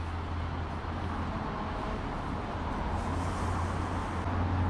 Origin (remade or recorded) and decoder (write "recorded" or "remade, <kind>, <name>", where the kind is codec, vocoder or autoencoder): recorded